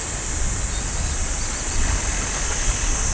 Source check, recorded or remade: recorded